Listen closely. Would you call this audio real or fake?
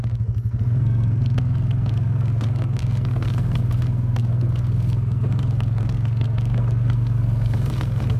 fake